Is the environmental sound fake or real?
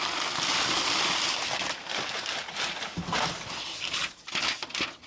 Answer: real